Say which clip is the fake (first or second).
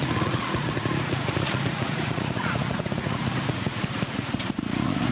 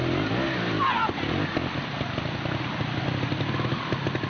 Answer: first